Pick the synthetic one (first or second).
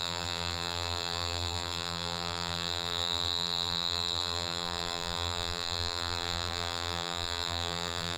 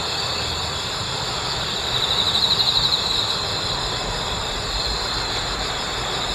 first